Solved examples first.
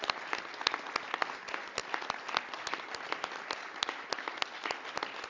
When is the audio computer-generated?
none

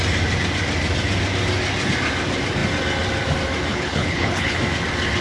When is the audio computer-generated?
3.7-4.6 (codec, HILCodec)